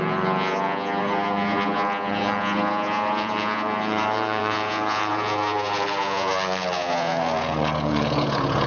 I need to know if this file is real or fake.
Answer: fake